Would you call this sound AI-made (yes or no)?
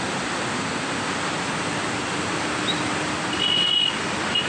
no